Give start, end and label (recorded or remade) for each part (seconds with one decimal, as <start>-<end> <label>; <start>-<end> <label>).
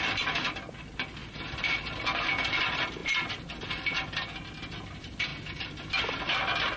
0.0-6.8 recorded